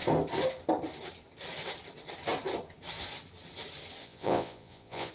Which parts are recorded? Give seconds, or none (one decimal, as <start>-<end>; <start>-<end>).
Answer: 0.0-4.0